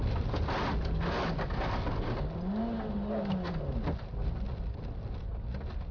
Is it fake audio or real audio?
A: real